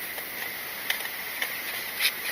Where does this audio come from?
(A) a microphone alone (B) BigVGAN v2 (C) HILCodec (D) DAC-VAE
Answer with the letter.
A